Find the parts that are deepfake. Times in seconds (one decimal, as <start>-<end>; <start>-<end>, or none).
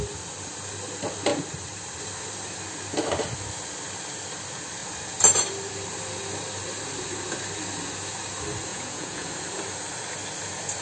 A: 8.7-9.3